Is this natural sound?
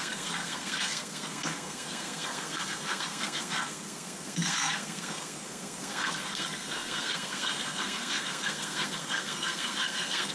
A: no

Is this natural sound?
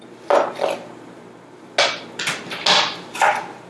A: yes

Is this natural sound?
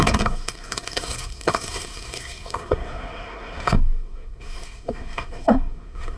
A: no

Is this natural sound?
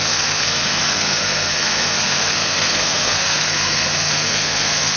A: no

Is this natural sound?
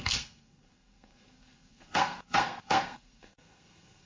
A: no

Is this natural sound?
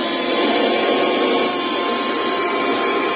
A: yes